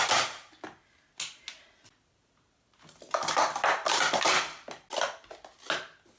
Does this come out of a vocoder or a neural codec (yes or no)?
no